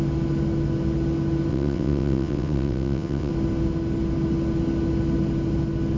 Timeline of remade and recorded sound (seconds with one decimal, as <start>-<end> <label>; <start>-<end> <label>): 0.0-1.5 recorded; 1.5-3.3 remade; 3.3-6.0 recorded